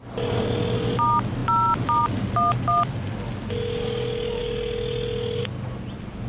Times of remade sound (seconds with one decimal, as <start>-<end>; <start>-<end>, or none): none